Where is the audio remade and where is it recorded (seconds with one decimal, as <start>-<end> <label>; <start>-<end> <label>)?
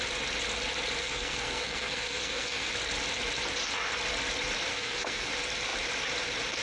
0.0-1.0 recorded; 1.0-2.7 remade; 2.7-4.7 recorded; 4.7-5.3 remade; 5.3-6.6 recorded